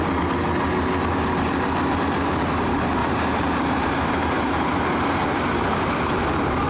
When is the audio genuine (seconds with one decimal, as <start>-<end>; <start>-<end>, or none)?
0.0-3.0; 6.1-6.7